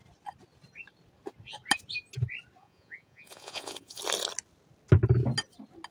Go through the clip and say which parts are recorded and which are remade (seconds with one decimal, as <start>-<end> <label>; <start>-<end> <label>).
0.0-2.6 recorded; 2.6-4.0 remade; 4.0-5.9 recorded